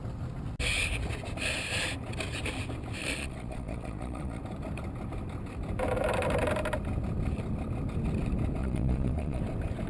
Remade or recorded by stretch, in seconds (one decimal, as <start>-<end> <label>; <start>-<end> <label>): 0.0-3.0 recorded; 3.0-4.4 remade; 4.4-8.6 recorded; 8.6-9.4 remade; 9.4-9.9 recorded